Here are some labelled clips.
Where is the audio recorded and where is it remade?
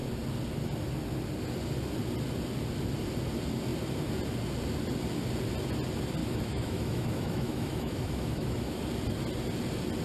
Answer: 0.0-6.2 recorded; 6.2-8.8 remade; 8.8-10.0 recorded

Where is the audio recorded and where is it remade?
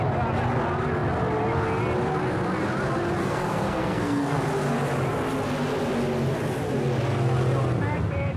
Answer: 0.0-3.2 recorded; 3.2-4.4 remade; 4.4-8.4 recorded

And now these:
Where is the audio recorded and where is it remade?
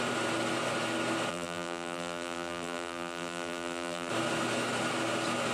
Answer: 0.0-1.3 recorded; 1.3-4.1 remade; 4.1-5.5 recorded